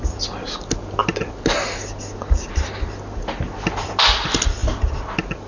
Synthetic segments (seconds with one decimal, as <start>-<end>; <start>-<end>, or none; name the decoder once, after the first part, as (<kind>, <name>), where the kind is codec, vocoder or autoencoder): none